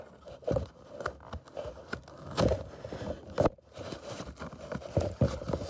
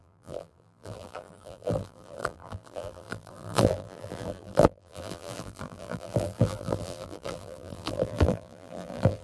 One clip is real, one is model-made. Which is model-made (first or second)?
second